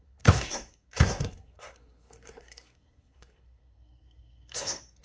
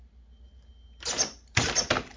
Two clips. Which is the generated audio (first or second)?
first